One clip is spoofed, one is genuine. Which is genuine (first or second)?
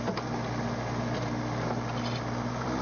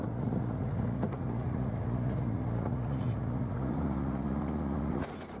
first